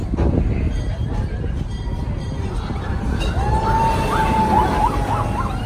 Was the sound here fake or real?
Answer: real